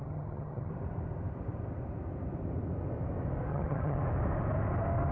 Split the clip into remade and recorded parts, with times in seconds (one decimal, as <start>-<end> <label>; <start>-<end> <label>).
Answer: 0.0-0.7 remade; 0.7-3.5 recorded; 3.5-4.0 remade; 4.0-5.1 recorded